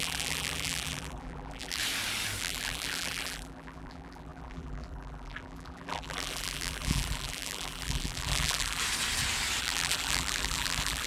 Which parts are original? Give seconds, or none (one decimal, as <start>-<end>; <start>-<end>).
1.8-2.4; 8.8-9.6